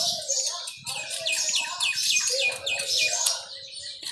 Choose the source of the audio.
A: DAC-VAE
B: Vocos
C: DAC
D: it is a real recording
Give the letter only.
D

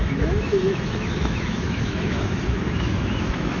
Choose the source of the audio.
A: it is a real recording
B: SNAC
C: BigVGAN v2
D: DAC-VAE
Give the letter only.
D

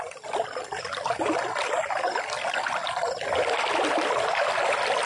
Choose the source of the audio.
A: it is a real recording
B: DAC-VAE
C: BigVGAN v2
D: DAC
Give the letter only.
A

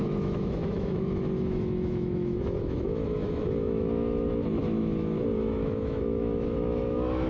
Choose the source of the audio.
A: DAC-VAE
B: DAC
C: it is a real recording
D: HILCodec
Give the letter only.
A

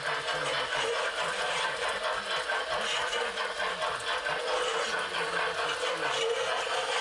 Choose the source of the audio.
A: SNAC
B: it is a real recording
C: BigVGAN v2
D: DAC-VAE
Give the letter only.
B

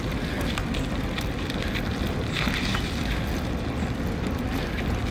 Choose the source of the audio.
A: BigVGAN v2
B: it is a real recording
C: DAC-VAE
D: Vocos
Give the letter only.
B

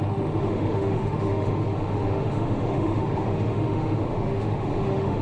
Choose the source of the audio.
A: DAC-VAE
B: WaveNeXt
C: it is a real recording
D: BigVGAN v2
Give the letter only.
A